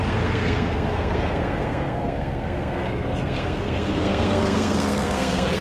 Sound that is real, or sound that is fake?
fake